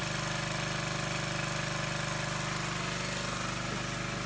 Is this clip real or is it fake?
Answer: real